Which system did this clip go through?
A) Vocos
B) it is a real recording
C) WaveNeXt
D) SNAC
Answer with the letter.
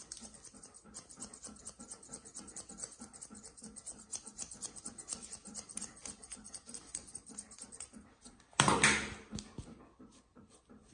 B